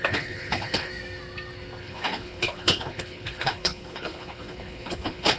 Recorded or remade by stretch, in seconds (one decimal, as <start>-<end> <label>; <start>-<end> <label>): 0.0-0.9 remade; 0.9-1.8 recorded; 1.8-5.4 remade

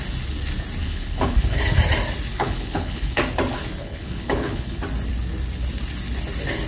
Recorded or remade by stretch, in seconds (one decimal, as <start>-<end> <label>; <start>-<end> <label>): 0.0-0.8 recorded; 0.8-1.6 remade; 1.6-2.3 recorded; 2.3-3.2 remade; 3.2-3.8 recorded; 3.8-4.8 remade; 4.8-6.7 recorded

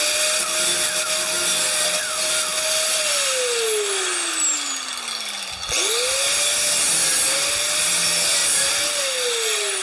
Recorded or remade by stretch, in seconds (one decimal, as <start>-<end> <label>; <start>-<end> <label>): 0.0-9.8 recorded